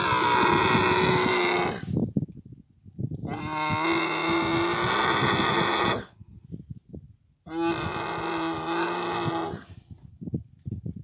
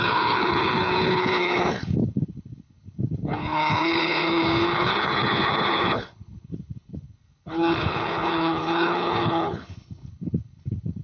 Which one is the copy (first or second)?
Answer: second